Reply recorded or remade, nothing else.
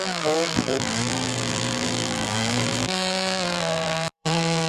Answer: remade